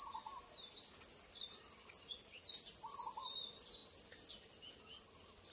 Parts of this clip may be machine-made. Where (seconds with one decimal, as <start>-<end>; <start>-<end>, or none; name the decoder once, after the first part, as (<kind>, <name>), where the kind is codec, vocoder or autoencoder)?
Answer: none